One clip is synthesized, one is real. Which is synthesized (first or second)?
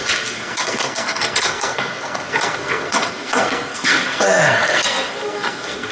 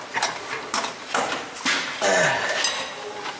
first